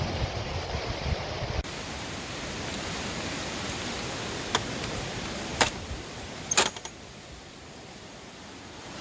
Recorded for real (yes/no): no